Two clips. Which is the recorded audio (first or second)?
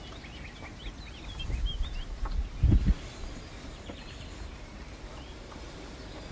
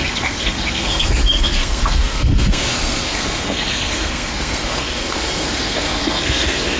first